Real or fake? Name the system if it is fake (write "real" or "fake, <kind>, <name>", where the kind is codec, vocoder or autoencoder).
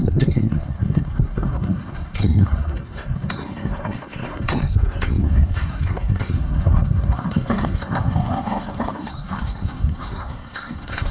fake, codec, SNAC